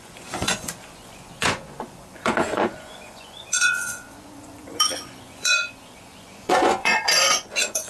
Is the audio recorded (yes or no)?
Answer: no